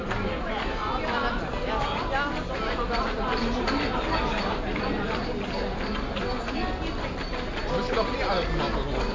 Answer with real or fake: real